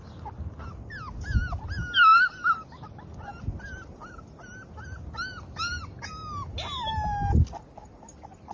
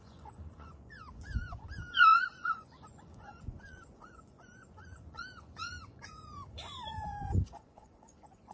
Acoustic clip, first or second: first